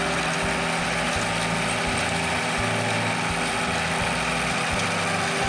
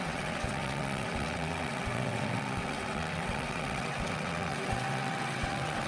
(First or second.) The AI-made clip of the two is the second